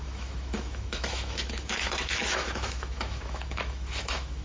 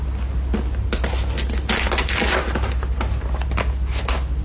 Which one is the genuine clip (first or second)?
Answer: second